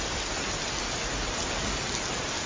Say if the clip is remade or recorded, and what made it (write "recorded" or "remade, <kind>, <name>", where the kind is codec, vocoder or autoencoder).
recorded